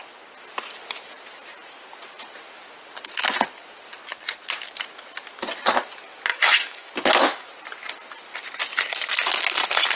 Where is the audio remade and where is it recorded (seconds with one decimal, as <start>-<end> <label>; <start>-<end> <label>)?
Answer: 0.0-6.3 recorded; 6.3-6.9 remade; 6.9-10.0 recorded